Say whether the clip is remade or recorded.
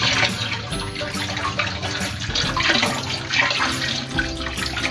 recorded